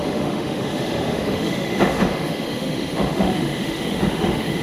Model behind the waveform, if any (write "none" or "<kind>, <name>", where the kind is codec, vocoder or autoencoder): autoencoder, DAC-VAE